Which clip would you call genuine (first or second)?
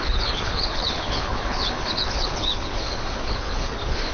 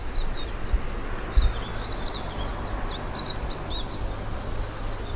second